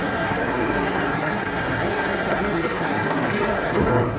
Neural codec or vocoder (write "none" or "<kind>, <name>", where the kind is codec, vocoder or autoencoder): codec, SNAC